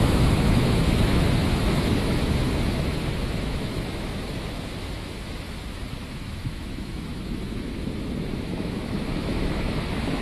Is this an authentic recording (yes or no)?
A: no